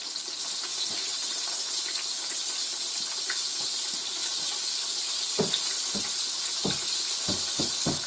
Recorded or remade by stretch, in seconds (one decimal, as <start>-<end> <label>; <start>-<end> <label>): 0.0-0.7 recorded; 0.7-1.8 remade; 1.8-8.1 recorded